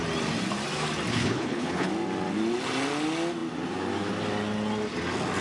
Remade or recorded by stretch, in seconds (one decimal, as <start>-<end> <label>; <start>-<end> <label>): 0.0-1.1 recorded; 1.1-1.9 remade; 1.9-5.4 recorded